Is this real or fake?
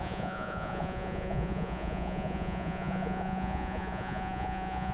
fake